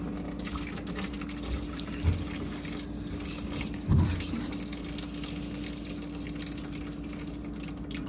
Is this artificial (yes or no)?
no